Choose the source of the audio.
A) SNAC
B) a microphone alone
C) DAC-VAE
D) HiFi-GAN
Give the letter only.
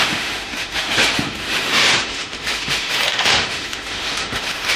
C